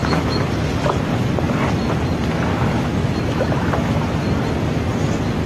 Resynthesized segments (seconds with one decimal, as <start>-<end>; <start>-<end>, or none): 0.0-0.5; 2.5-3.7